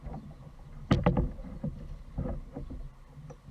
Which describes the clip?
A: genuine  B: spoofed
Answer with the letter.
A